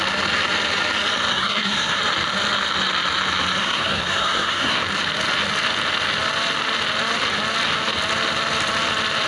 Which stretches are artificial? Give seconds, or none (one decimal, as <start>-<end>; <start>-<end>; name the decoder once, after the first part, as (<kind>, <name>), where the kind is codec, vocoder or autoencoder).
1.3-2.0 (codec, SNAC); 3.6-4.8